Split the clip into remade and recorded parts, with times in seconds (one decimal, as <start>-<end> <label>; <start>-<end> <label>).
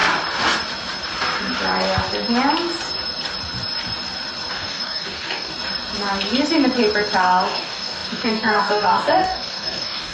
0.0-4.5 recorded; 4.5-5.5 remade; 5.5-7.2 recorded; 7.2-10.1 remade